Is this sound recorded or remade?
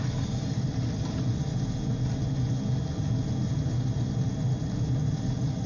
recorded